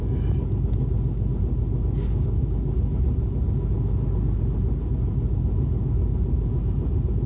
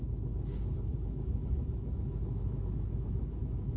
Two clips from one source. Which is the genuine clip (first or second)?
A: first